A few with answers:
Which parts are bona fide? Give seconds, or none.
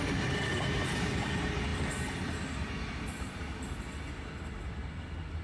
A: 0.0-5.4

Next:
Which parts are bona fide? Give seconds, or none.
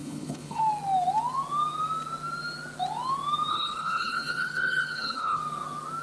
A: 0.6-3.5; 5.4-6.0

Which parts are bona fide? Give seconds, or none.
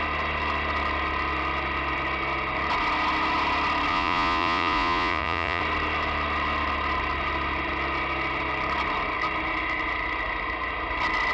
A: 0.0-3.9; 5.6-11.3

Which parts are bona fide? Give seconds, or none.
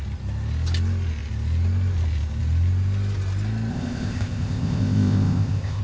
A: 0.0-3.7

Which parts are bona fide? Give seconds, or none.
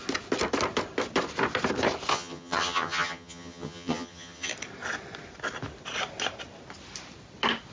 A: 0.0-2.1; 4.5-7.7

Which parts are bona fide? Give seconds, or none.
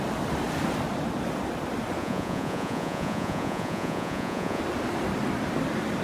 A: 0.0-2.0; 4.6-6.0